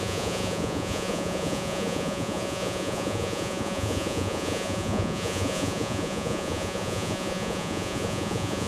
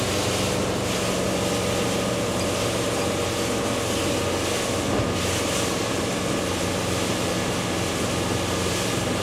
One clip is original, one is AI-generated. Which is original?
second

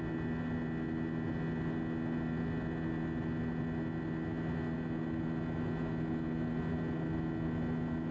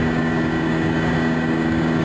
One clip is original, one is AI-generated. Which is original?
first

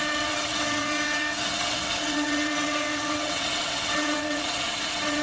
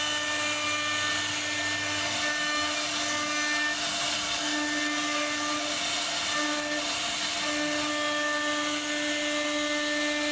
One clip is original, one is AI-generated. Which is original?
second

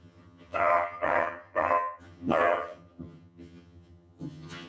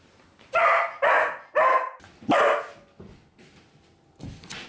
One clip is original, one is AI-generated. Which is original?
second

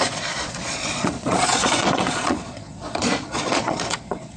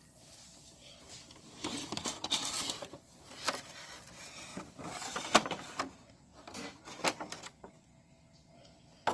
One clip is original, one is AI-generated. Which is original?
second